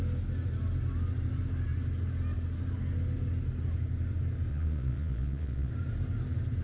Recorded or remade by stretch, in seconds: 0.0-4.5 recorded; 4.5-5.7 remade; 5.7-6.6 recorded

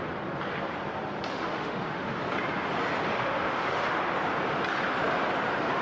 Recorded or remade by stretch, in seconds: 0.0-1.3 recorded; 1.3-2.2 remade; 2.2-3.1 recorded; 3.1-4.0 remade; 4.0-5.8 recorded

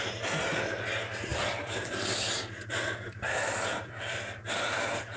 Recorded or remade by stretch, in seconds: 0.0-1.3 recorded; 1.3-4.4 remade; 4.4-5.2 recorded

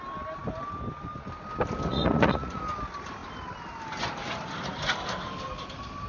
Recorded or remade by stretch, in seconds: 0.0-1.9 recorded; 1.9-2.6 remade; 2.6-6.1 recorded